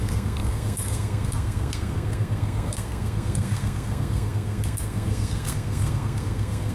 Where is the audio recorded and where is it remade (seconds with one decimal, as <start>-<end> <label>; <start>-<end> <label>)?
0.0-6.7 remade